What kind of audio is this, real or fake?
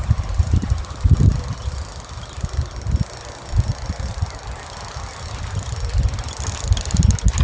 real